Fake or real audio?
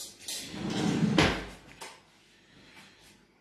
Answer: real